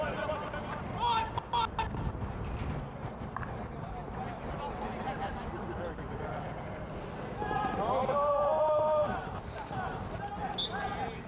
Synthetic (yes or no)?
no